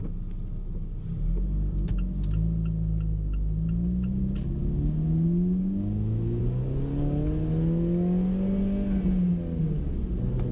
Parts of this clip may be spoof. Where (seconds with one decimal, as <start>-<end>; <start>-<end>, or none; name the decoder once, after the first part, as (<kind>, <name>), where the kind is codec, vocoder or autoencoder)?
4.6-6.4 (codec, DAC)